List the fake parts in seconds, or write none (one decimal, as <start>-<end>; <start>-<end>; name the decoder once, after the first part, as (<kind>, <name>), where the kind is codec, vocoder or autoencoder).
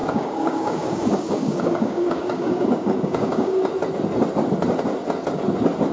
0.0-3.6 (codec, DAC)